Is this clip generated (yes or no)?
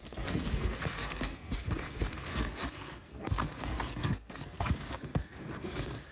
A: yes